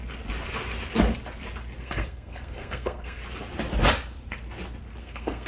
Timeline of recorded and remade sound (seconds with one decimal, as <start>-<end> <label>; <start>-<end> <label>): 0.0-1.8 recorded; 1.8-3.2 remade; 3.2-5.0 recorded; 5.0-5.5 remade